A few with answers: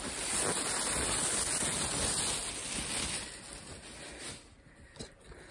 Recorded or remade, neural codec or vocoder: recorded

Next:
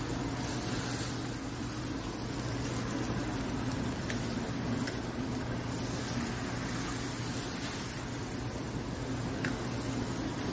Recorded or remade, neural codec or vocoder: recorded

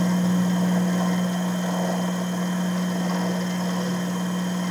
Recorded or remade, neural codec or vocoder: recorded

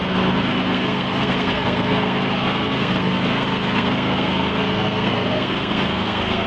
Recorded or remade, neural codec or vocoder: remade, codec, SNAC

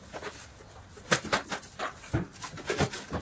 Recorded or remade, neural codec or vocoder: remade, vocoder, BigVGAN v2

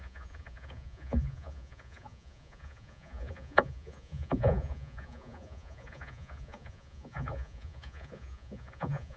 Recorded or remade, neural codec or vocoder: remade, vocoder, Vocos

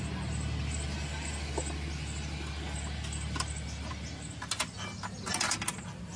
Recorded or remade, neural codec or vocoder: recorded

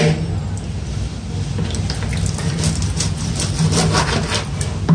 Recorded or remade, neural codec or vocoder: recorded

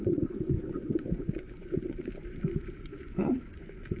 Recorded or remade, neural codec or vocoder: remade, vocoder, Vocos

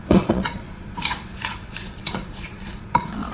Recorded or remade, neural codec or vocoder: remade, vocoder, Vocos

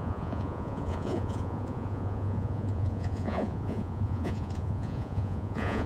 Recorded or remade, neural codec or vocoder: remade, vocoder, Vocos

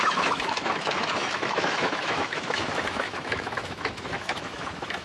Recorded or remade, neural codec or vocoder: remade, autoencoder, DAC-VAE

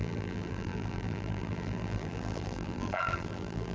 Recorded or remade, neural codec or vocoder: remade, vocoder, BigVGAN v2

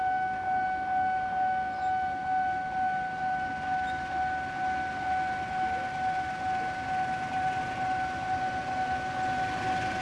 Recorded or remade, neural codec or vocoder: recorded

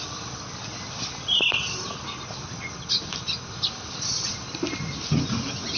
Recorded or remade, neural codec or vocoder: recorded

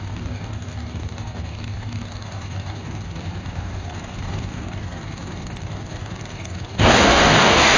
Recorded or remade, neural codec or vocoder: remade, codec, DAC